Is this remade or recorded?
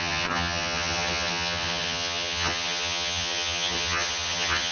remade